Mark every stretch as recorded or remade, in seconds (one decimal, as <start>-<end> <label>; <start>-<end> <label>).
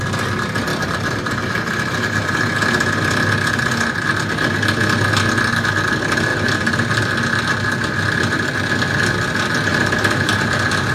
0.0-0.7 recorded; 0.7-2.6 remade; 2.6-6.3 recorded; 6.3-7.0 remade; 7.0-9.7 recorded; 9.7-10.9 remade